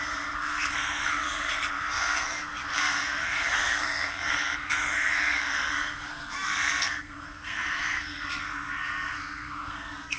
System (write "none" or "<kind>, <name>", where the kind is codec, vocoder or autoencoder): codec, SNAC